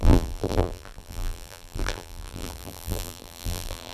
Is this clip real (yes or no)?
no